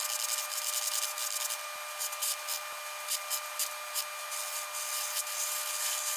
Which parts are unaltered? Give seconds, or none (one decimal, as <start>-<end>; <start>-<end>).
0.0-6.2